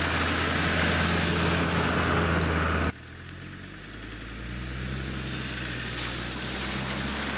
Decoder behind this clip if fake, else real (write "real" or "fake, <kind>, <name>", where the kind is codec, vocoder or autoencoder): real